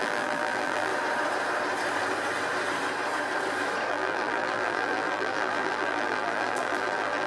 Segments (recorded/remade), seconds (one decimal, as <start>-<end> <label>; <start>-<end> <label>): 0.0-0.9 remade; 0.9-3.9 recorded; 3.9-7.3 remade